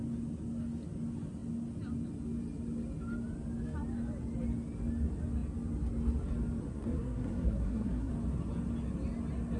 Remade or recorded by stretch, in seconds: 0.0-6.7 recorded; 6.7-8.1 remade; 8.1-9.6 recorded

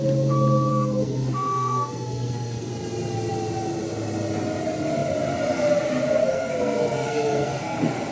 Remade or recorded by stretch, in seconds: 0.0-0.7 recorded; 0.7-2.7 remade; 2.7-6.2 recorded; 6.2-8.1 remade

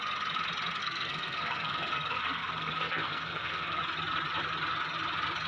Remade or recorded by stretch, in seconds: 0.0-0.8 recorded; 0.8-3.8 remade; 3.8-5.5 recorded

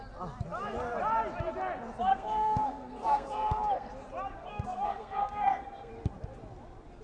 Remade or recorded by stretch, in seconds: 0.0-2.1 recorded; 2.1-3.9 remade; 3.9-4.4 recorded; 4.4-5.9 remade; 5.9-7.0 recorded

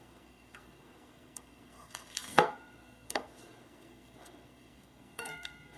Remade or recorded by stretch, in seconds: 0.0-5.8 remade